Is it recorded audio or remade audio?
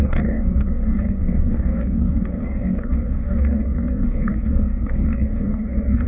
remade